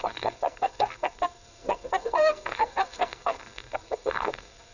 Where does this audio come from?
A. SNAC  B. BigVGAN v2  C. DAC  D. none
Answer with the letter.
A